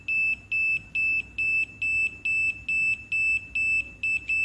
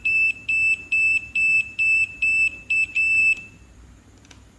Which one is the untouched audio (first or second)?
first